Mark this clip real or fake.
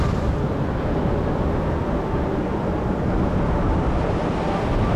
real